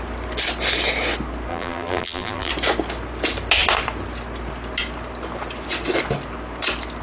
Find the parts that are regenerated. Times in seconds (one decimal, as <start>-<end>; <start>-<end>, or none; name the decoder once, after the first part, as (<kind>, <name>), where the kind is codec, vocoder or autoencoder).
1.5-2.5 (vocoder, BigVGAN v2)